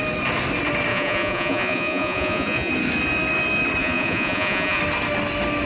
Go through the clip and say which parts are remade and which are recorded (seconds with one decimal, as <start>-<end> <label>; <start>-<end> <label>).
0.0-0.9 recorded; 0.9-2.7 remade; 2.7-3.8 recorded; 3.8-4.8 remade; 4.8-5.7 recorded